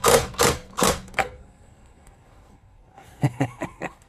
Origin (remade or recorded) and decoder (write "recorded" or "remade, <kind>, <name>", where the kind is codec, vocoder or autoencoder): remade, codec, SNAC